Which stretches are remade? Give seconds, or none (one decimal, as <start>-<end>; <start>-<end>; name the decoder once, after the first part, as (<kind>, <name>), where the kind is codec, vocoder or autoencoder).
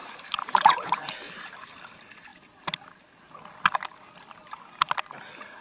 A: 0.0-1.5 (vocoder, BigVGAN v2)